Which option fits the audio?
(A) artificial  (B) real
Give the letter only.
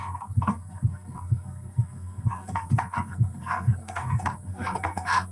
A